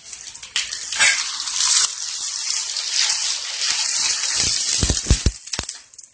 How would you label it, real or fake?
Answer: real